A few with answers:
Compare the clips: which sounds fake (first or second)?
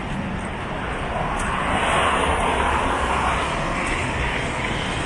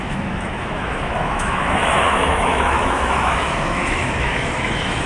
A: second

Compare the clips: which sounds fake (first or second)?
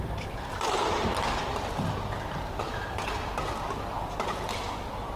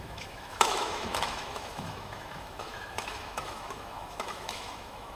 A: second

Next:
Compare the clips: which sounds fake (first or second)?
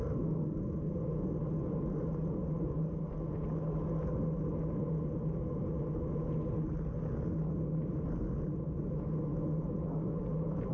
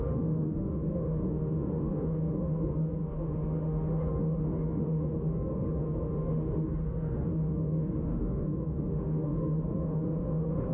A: second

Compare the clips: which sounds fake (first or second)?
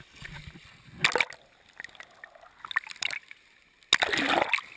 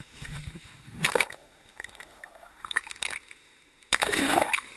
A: second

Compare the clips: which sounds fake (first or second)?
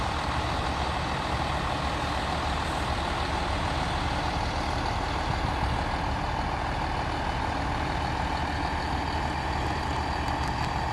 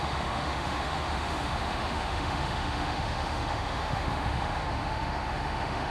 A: second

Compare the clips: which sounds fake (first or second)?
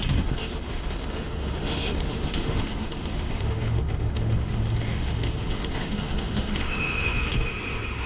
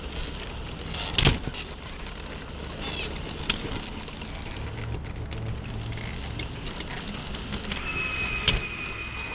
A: first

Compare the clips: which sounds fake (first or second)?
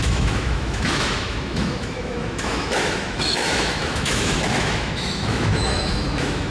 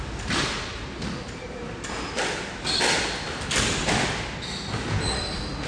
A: first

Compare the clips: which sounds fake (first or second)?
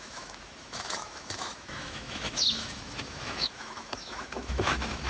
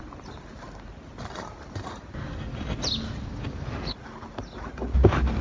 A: first